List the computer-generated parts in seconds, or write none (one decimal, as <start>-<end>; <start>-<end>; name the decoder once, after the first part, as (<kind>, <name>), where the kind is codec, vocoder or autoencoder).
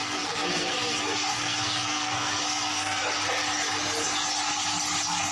0.0-3.0 (codec, SNAC)